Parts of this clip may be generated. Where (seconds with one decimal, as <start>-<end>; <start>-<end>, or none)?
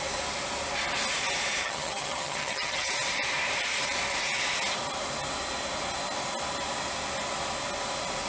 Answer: 1.6-2.9